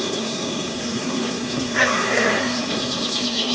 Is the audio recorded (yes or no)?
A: no